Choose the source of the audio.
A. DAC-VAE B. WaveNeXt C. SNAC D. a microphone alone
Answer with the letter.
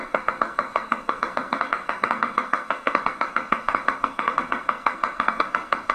C